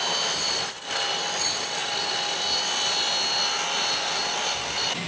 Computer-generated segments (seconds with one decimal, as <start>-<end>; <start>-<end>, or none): none